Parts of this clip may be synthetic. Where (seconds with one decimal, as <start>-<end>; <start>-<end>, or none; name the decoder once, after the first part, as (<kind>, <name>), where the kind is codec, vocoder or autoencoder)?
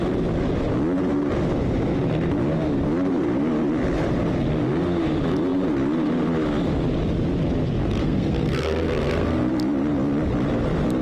8.0-9.5 (codec, SNAC)